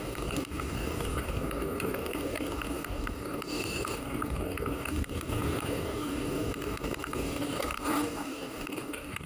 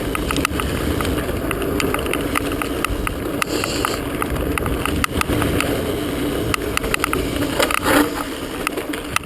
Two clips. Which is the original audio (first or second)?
second